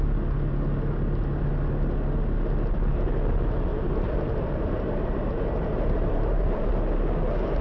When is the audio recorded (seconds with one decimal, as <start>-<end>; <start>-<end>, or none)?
0.0-3.7; 6.7-7.6

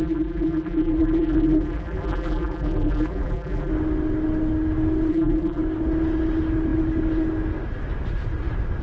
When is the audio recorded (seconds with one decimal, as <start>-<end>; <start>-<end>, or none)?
3.7-5.1; 5.6-8.8